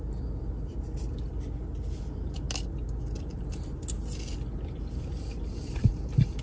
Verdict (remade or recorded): recorded